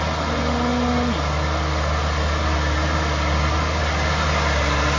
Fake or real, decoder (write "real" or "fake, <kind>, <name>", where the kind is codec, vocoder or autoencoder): real